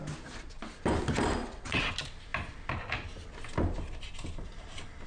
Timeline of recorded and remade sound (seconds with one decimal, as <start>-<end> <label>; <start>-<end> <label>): 0.0-1.4 recorded; 1.4-1.9 remade; 1.9-5.1 recorded

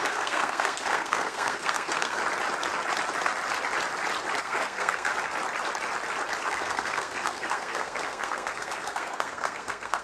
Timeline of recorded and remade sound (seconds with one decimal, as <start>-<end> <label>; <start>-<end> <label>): 0.0-2.2 remade; 2.2-4.4 recorded; 4.4-5.1 remade; 5.1-6.5 recorded; 6.5-10.0 remade